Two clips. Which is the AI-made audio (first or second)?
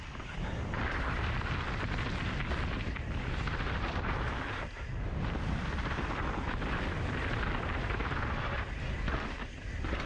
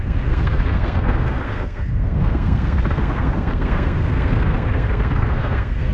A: second